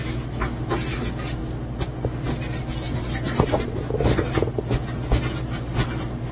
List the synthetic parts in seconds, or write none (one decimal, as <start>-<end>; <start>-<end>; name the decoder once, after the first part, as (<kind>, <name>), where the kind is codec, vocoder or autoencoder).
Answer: none